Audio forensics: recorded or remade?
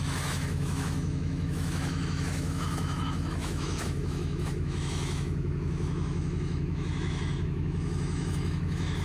remade